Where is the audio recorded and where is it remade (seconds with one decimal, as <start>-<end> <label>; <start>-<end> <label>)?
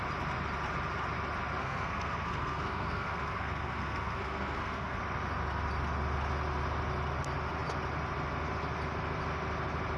0.0-1.6 recorded; 1.6-5.0 remade; 5.0-10.0 recorded